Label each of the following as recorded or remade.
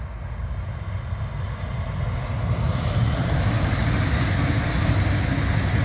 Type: recorded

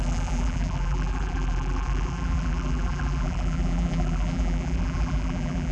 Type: remade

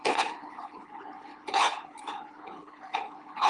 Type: remade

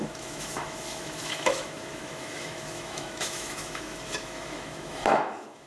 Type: remade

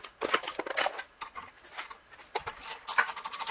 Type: recorded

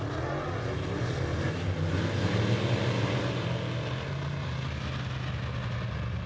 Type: recorded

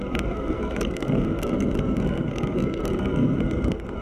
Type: remade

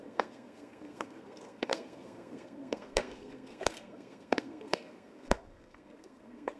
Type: remade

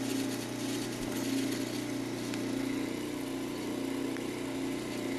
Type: recorded